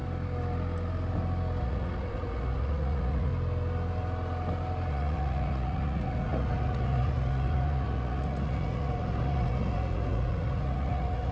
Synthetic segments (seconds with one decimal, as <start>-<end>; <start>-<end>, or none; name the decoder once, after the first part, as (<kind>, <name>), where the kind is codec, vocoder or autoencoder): 1.6-3.3 (vocoder, Vocos); 4.9-11.3